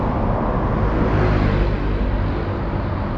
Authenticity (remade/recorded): recorded